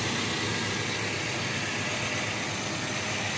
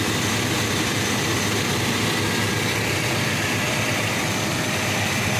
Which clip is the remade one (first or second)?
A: second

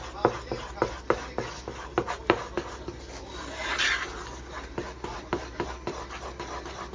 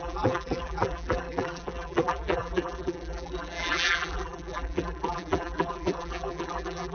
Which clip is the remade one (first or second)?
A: second